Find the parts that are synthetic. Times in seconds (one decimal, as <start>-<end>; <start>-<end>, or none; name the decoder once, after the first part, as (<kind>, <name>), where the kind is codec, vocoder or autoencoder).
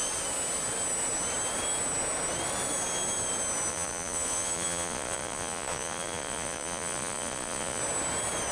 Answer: 3.7-7.8 (vocoder, Vocos)